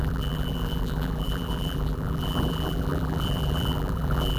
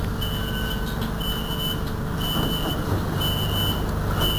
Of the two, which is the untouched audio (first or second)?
second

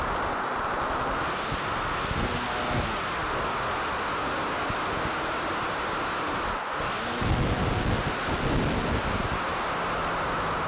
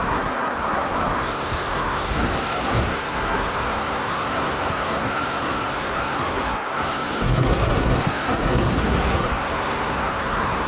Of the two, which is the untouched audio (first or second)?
first